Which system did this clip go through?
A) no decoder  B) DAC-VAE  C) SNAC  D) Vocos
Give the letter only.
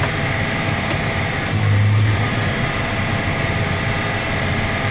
A